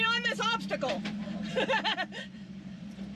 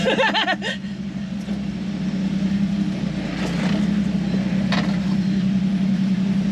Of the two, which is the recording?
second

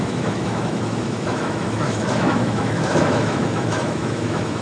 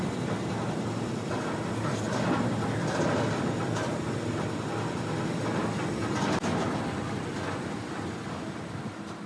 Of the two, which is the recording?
second